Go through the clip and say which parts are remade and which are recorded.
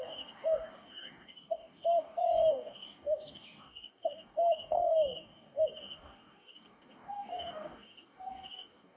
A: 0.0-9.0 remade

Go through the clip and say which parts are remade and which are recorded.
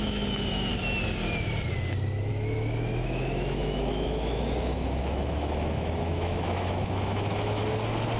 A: 0.0-0.7 remade; 0.7-2.3 recorded; 2.3-7.6 remade; 7.6-8.2 recorded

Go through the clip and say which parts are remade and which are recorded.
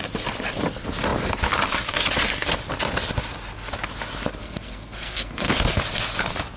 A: 0.0-4.4 recorded; 4.4-5.5 remade; 5.5-6.6 recorded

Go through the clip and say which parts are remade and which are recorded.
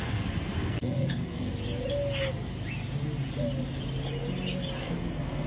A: 0.0-1.5 remade; 1.5-4.8 recorded; 4.8-5.5 remade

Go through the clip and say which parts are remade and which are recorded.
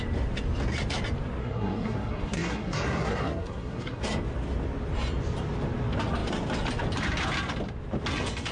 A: 0.0-1.4 recorded; 1.4-4.0 remade; 4.0-8.5 recorded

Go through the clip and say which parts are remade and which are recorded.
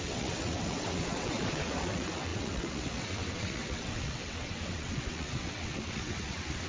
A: 0.0-6.7 remade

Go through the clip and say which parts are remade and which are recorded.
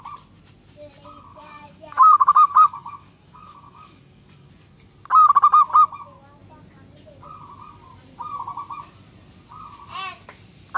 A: 0.0-1.3 recorded; 1.3-4.5 remade; 4.5-10.8 recorded